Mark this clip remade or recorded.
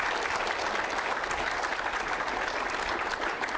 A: recorded